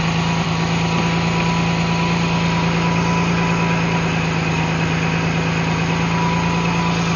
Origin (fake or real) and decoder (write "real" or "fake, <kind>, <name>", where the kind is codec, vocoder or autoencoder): real